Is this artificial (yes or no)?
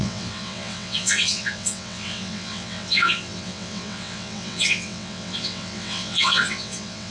yes